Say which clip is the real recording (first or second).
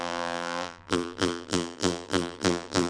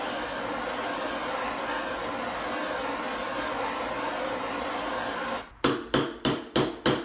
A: second